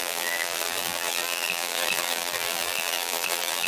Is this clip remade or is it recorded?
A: remade